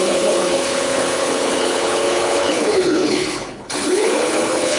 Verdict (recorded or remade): remade